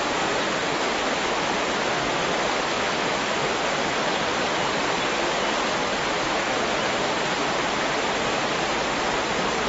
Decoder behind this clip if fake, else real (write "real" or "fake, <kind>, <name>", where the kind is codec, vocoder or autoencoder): real